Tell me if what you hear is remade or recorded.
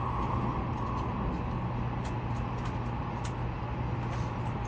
recorded